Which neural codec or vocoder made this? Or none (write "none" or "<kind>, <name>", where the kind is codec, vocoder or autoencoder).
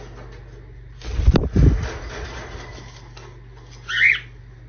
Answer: none